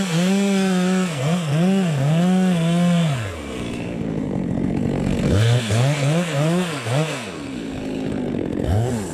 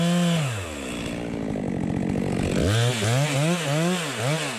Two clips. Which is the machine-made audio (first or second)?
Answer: first